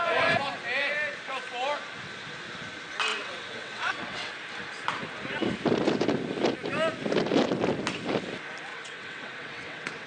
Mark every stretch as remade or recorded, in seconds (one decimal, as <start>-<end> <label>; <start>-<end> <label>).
0.0-3.1 recorded; 3.1-4.3 remade; 4.3-8.7 recorded; 8.7-10.1 remade